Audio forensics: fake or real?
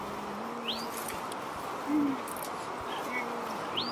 real